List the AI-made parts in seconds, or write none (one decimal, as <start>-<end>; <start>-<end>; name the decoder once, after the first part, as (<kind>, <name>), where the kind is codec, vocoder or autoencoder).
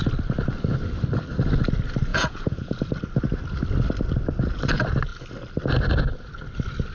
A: 2.1-2.7 (vocoder, Vocos)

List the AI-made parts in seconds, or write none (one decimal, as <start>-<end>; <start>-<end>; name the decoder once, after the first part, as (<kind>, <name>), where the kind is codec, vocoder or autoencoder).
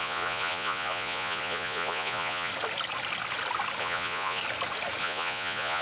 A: 0.0-2.5 (vocoder, Vocos); 3.8-4.4; 5.0-5.8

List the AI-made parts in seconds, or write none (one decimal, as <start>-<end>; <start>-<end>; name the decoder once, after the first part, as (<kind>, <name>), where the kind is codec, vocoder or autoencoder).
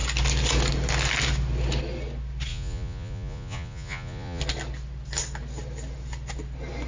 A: 2.5-4.4 (vocoder, Vocos)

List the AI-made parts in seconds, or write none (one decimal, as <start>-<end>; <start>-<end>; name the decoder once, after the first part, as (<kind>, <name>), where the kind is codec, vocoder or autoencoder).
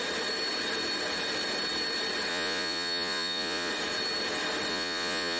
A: 2.3-3.7 (vocoder, Vocos); 4.7-5.4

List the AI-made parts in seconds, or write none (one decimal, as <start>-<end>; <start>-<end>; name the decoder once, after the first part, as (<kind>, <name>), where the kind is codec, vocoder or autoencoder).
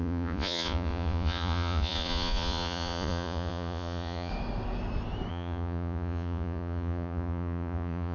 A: 0.0-4.3 (vocoder, Vocos); 5.3-8.1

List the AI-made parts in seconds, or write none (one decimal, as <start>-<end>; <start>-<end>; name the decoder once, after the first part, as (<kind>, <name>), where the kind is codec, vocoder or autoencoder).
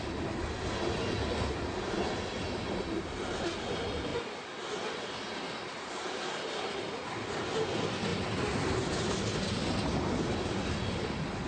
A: none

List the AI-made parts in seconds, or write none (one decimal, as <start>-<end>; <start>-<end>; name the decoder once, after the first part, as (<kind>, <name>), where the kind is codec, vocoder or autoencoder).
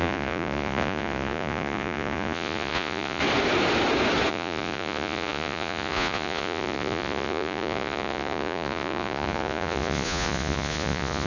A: 0.0-3.2 (vocoder, Vocos); 4.3-11.3